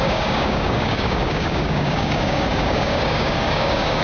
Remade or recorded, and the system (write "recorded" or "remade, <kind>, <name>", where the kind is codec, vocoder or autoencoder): remade, codec, DAC